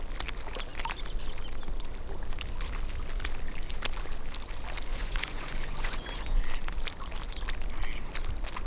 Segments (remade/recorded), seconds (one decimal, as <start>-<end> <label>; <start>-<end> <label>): 0.0-4.9 recorded; 4.9-6.4 remade; 6.4-8.7 recorded